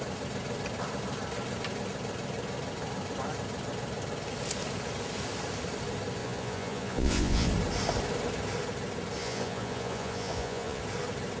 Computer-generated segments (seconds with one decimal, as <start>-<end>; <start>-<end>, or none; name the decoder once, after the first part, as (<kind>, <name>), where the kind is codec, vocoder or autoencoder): 6.2-7.5 (vocoder, Vocos); 9.2-10.8